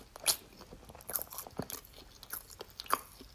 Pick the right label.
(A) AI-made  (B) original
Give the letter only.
B